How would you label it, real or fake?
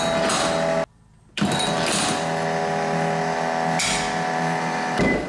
real